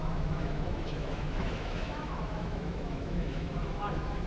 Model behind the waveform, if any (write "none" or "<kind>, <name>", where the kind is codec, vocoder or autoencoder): autoencoder, DAC-VAE